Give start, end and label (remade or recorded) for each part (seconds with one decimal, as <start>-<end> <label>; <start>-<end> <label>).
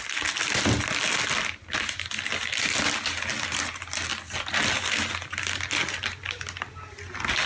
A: 0.0-7.5 recorded